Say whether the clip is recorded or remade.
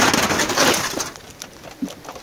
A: recorded